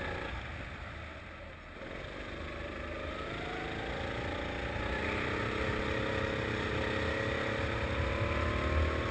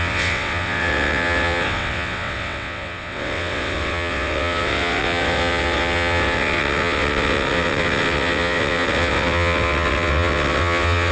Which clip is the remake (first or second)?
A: second